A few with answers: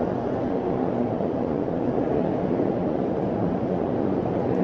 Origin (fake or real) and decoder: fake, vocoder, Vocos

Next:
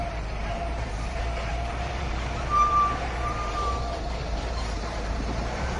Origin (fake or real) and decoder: fake, vocoder, BigVGAN v2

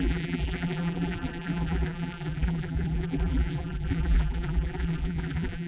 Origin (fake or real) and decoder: fake, vocoder, BigVGAN v2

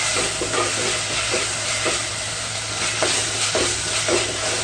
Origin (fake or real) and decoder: real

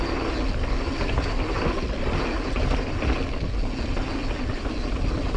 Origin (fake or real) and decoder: real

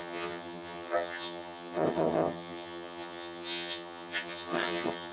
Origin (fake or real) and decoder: fake, vocoder, HiFi-GAN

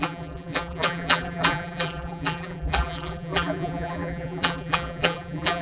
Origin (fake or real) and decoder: fake, vocoder, BigVGAN v2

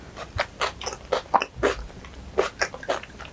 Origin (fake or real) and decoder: fake, vocoder, BigVGAN v2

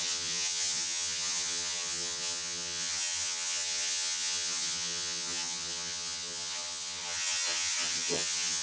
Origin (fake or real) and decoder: fake, vocoder, HiFi-GAN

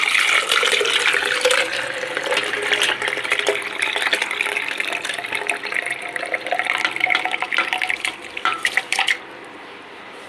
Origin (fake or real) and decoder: fake, vocoder, BigVGAN v2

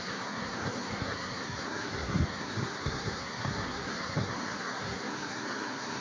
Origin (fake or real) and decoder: fake, codec, SNAC